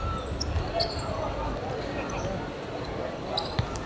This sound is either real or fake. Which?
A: real